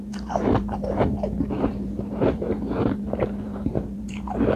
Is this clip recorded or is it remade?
remade